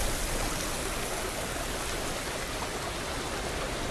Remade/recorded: recorded